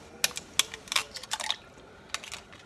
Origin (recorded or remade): recorded